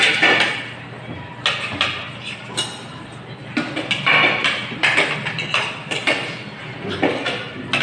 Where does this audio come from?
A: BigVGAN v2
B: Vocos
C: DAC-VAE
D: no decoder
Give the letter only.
D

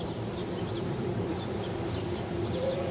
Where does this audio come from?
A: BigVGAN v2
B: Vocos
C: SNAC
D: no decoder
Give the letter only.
A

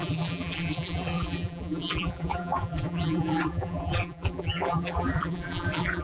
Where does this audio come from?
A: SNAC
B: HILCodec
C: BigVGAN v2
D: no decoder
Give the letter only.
C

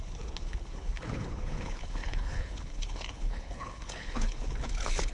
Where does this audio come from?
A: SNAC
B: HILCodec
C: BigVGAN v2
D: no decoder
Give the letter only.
B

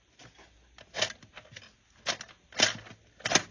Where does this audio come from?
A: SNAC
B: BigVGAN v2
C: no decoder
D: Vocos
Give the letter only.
C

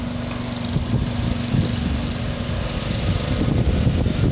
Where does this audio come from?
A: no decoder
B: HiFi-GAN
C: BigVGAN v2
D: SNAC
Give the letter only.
A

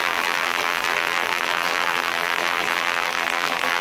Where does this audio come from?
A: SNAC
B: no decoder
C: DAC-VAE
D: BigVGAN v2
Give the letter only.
D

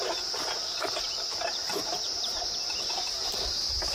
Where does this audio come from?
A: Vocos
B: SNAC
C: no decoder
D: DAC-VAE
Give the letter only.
C